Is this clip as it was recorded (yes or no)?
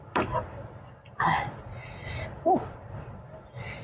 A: yes